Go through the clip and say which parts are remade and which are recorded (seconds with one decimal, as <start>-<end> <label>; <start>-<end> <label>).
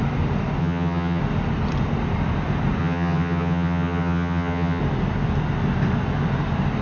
0.0-0.6 recorded; 0.6-1.2 remade; 1.2-2.8 recorded; 2.8-4.8 remade; 4.8-6.8 recorded